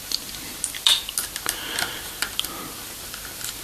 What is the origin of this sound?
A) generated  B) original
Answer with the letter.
B